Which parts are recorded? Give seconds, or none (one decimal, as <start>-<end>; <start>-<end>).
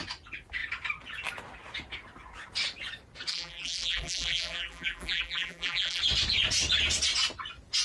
0.0-3.3; 6.0-7.8